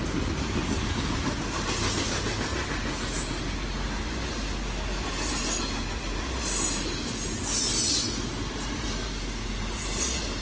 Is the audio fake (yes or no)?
no